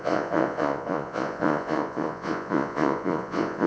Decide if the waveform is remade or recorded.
remade